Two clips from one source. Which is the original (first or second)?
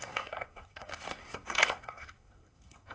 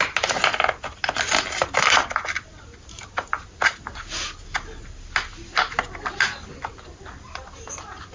second